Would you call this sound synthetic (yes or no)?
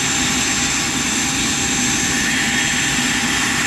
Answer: no